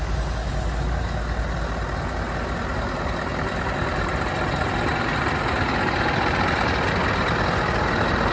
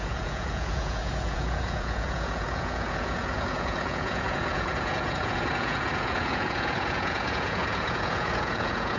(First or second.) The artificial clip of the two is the second